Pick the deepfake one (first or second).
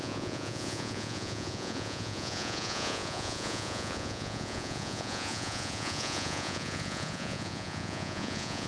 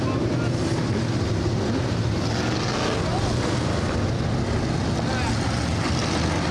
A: first